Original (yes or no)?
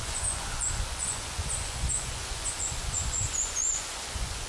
no